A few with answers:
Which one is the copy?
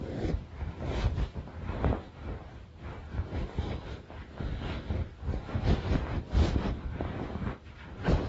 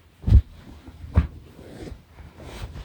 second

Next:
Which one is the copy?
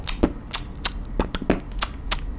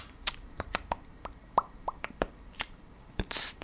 second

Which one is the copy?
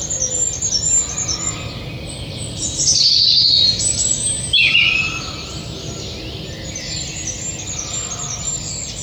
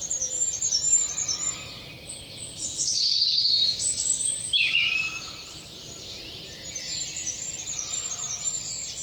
second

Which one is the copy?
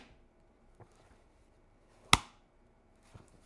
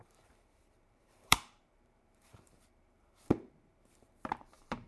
second